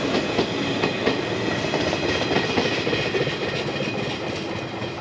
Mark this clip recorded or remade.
recorded